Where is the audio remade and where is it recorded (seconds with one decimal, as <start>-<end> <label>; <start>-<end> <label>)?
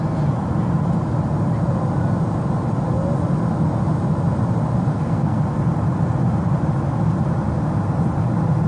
0.0-4.9 recorded; 4.9-5.4 remade; 5.4-8.7 recorded